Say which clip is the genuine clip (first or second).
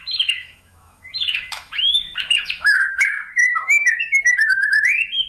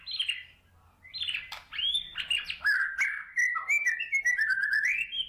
second